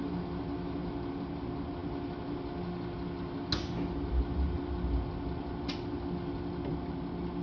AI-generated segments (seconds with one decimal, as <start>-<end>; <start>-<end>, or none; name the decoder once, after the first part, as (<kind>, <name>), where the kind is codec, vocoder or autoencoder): none